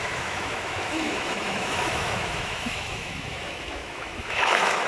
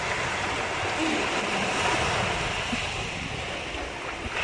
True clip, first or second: second